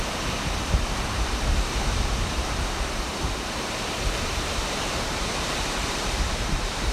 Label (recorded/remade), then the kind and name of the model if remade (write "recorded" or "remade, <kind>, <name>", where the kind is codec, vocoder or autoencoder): remade, vocoder, BigVGAN v2